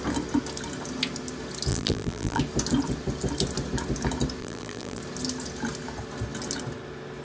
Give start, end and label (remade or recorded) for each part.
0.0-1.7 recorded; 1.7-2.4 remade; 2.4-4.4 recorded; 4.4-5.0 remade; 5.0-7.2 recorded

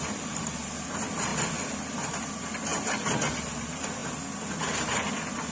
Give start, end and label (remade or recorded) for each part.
0.0-5.5 recorded

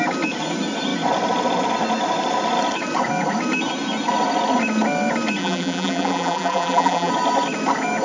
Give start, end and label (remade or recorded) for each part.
0.0-5.4 recorded; 5.4-7.1 remade; 7.1-8.0 recorded

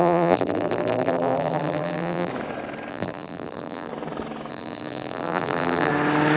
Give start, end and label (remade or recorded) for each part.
0.0-2.3 remade; 2.3-2.9 recorded; 2.9-3.9 remade; 3.9-4.5 recorded; 4.5-5.9 remade; 5.9-6.4 recorded